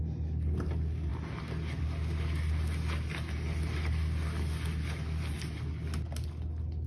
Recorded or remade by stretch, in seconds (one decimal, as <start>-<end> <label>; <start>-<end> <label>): 0.0-6.9 recorded